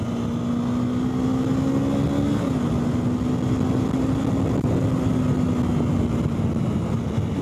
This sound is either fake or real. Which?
real